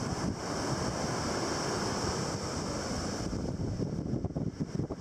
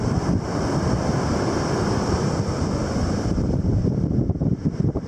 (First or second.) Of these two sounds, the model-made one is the second